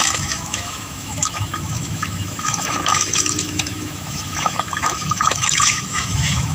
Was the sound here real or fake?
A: fake